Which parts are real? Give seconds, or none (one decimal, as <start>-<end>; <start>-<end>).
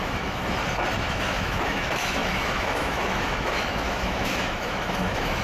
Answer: 0.4-1.1